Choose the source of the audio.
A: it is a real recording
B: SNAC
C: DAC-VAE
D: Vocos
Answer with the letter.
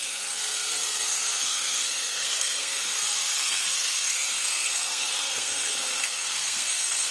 B